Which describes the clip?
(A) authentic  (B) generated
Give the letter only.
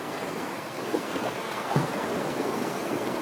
B